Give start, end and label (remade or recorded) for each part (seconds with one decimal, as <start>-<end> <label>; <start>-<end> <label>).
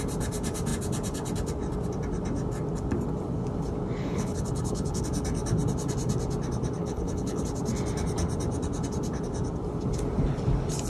0.0-4.0 recorded; 4.0-5.0 remade; 5.0-6.8 recorded; 6.8-7.4 remade; 7.4-10.9 recorded